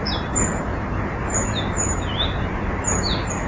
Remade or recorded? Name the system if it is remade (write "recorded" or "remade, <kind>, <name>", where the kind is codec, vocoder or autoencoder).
remade, vocoder, BigVGAN v2